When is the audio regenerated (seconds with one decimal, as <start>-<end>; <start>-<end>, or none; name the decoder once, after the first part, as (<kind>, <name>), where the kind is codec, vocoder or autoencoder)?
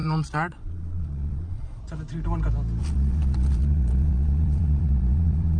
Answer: 0.0-1.8 (vocoder, Vocos); 2.8-5.6